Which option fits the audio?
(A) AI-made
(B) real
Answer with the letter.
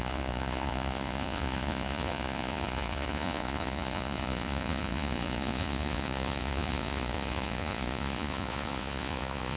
A